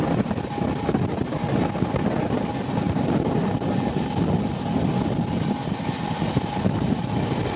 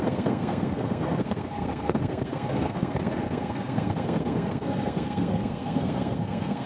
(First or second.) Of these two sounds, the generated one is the second